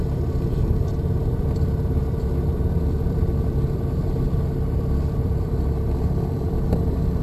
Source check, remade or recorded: remade